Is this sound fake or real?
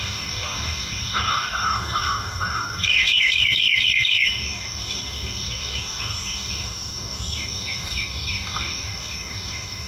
fake